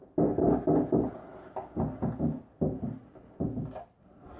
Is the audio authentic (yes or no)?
yes